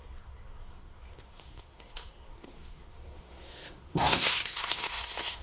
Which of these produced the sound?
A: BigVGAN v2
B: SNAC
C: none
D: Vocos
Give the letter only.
B